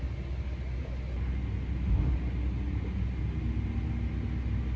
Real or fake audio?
real